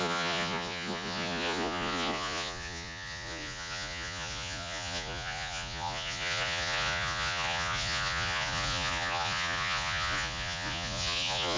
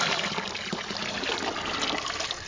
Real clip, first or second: second